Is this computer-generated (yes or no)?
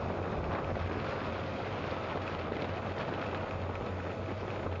no